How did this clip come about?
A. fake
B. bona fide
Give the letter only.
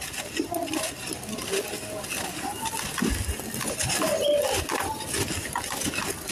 B